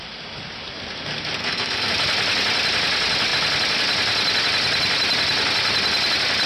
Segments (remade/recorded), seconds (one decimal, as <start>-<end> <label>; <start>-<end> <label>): 0.0-1.4 recorded; 1.4-1.9 remade; 1.9-6.5 recorded